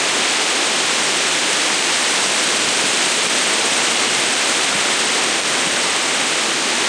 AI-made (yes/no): no